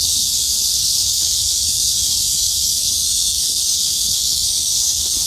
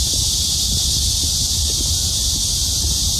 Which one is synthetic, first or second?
first